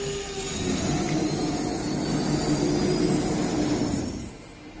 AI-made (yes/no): no